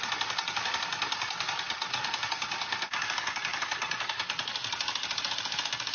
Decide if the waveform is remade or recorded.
recorded